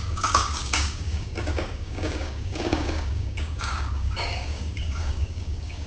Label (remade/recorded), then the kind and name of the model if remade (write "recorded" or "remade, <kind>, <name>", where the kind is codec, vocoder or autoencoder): remade, codec, DAC